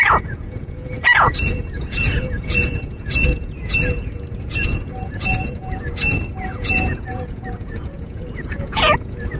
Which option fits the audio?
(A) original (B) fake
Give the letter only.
B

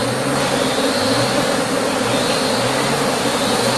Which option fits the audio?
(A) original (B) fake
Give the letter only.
A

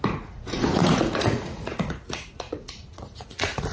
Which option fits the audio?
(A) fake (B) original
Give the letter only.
A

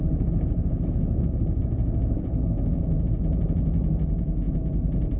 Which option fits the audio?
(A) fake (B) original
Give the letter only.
A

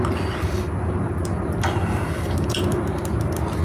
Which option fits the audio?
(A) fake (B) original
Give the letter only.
B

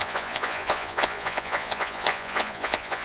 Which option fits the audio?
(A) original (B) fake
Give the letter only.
B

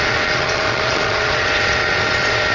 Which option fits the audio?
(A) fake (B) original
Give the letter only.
A